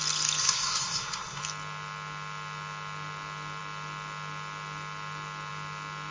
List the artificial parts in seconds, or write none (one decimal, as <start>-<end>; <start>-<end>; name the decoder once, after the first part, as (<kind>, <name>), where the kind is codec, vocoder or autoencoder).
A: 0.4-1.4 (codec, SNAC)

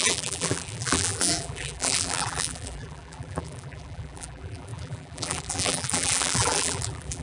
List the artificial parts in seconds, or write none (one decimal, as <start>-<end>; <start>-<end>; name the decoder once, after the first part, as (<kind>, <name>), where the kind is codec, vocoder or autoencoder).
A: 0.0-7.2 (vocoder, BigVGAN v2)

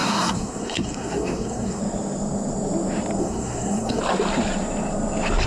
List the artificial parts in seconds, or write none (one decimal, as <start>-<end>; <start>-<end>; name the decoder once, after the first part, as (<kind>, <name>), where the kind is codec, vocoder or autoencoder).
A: 0.0-1.8 (codec, SNAC); 3.2-4.0